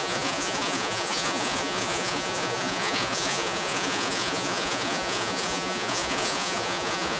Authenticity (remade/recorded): remade